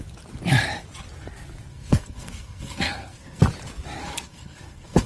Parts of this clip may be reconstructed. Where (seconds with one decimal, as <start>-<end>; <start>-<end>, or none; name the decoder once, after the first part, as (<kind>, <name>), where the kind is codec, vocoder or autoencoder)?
1.7-3.4 (codec, SNAC); 4.0-5.1

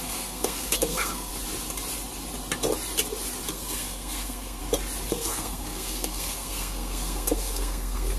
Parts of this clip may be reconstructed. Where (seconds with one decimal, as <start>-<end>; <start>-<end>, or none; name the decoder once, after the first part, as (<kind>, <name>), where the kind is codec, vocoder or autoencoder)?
0.0-1.3 (codec, SNAC); 3.5-4.6; 5.1-8.2

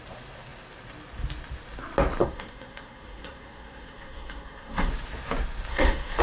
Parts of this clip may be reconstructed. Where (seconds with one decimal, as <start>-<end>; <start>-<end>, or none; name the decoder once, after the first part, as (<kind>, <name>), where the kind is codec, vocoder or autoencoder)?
2.2-4.9 (codec, SNAC); 5.7-6.2

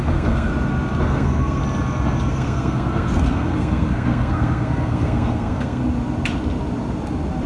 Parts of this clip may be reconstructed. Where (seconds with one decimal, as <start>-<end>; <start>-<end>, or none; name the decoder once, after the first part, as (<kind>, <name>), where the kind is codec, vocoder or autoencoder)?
0.0-0.5 (codec, SNAC); 1.0-1.6; 2.3-5.8

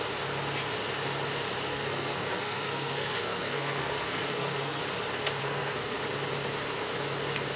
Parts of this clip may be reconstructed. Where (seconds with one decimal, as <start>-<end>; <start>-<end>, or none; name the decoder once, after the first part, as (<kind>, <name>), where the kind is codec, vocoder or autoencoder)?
1.7-4.8 (codec, SNAC); 5.4-6.0

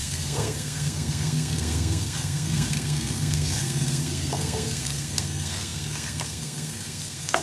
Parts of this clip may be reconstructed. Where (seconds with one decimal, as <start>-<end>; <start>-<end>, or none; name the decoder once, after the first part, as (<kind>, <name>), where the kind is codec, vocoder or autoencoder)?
0.0-7.4 (codec, SNAC)